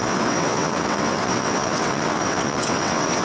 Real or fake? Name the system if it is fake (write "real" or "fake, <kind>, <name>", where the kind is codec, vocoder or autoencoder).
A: fake, vocoder, WaveNeXt